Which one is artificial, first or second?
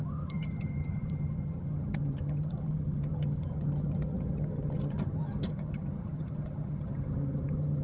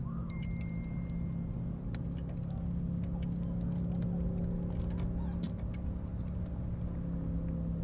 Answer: first